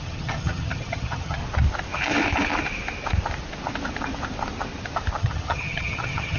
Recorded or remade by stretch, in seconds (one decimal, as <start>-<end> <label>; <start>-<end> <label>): 0.0-1.4 remade; 1.4-5.2 recorded; 5.2-6.4 remade